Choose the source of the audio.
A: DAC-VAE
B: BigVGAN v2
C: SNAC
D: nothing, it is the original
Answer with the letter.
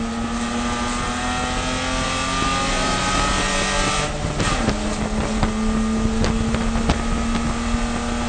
D